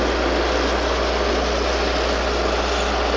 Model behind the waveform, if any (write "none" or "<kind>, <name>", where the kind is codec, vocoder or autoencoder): none